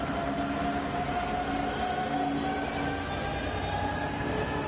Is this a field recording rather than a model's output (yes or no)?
yes